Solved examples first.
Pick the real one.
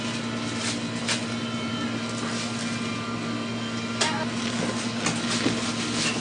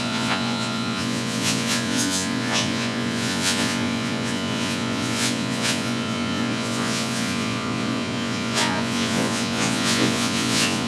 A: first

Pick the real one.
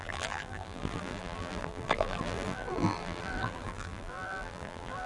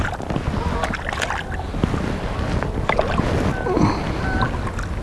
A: second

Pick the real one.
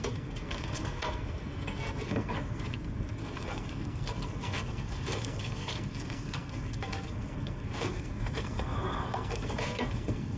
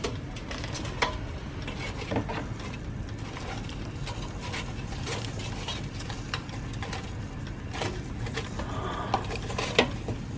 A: second